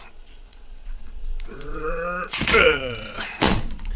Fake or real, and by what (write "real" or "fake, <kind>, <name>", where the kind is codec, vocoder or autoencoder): fake, vocoder, Vocos